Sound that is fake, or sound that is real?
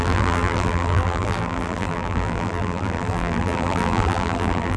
fake